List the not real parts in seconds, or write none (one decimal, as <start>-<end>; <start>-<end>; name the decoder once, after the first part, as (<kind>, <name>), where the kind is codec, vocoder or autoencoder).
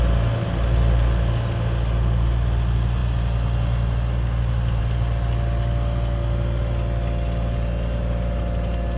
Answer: none